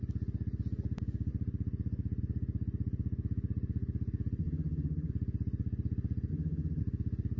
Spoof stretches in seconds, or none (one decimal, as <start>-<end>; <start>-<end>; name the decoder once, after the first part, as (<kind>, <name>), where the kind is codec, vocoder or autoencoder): 4.4-5.1 (vocoder, HiFi-GAN); 6.3-6.8